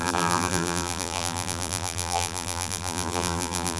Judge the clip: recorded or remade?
remade